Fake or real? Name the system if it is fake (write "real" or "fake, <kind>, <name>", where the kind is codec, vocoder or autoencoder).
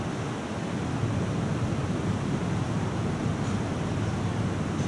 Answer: real